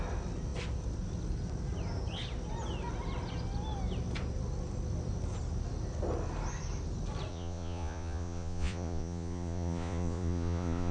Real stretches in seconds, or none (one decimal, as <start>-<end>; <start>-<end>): 0.0-7.3